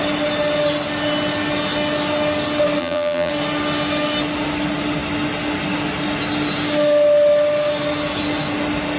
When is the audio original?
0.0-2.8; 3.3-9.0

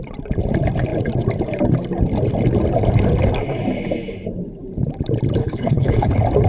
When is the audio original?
0.0-5.4; 6.1-6.5

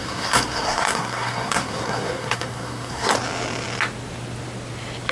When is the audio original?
3.1-5.1